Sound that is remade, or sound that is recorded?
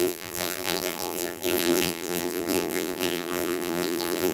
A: remade